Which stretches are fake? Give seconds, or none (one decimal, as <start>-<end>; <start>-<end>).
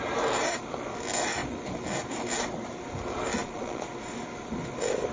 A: 3.4-3.9